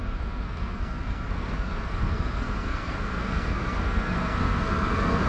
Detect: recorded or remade remade